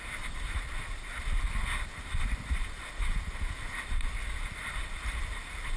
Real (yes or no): yes